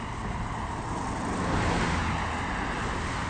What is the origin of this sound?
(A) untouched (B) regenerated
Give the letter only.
A